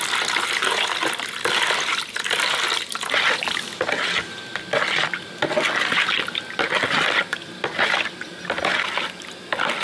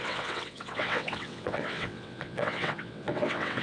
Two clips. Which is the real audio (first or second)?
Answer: first